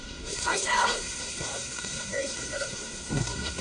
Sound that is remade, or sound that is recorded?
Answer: remade